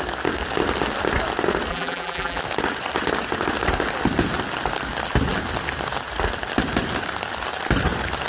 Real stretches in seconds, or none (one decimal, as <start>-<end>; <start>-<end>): 0.0-1.7; 2.4-8.3